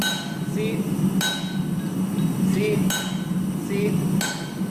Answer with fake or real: real